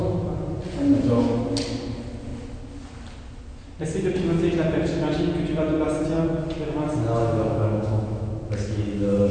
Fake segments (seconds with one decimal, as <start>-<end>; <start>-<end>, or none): 7.2-8.3